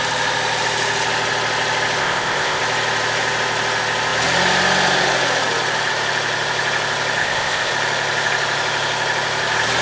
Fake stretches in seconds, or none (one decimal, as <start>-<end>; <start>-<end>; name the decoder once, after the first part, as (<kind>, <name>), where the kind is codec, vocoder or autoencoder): 2.0-2.6 (codec, ZipCodec); 7.2-7.7